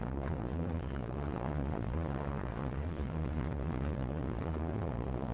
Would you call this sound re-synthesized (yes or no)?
yes